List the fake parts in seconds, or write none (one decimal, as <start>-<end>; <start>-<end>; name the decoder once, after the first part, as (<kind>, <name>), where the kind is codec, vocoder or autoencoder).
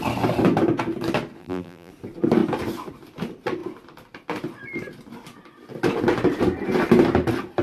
1.4-1.9 (vocoder, BigVGAN v2)